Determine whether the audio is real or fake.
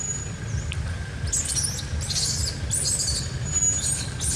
real